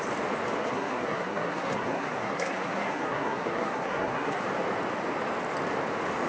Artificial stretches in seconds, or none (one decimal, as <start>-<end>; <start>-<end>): 0.6-4.4

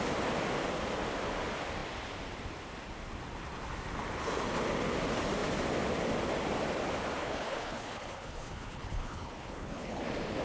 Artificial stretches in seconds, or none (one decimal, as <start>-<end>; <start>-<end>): 7.2-10.0

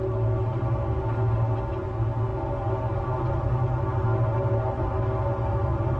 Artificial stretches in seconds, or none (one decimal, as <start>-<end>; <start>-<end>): none

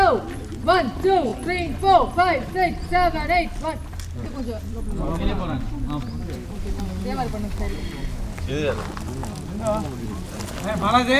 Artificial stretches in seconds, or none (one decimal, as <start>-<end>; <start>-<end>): none

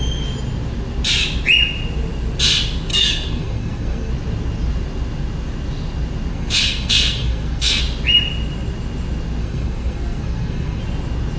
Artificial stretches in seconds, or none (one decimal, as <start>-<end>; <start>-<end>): 2.9-4.1; 6.3-7.8; 9.4-10.8

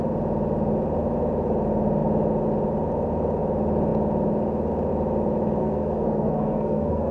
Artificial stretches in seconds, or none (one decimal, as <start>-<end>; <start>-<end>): 5.6-7.1

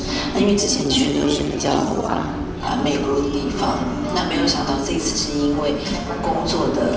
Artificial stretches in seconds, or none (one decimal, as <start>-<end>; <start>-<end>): 0.6-2.3

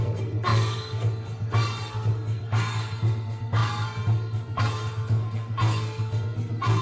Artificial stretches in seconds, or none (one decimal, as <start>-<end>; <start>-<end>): 0.0-6.8